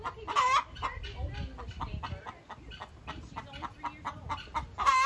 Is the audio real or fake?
real